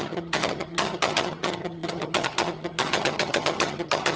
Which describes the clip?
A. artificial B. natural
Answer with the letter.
A